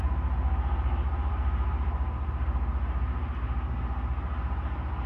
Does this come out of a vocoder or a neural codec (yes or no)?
no